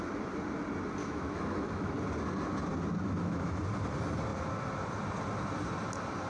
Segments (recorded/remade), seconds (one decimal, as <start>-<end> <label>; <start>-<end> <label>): 0.0-1.0 recorded; 1.0-1.9 remade; 1.9-3.0 recorded; 3.0-3.6 remade; 3.6-6.3 recorded